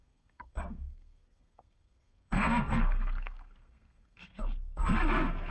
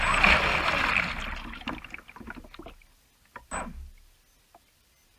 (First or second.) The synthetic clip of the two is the first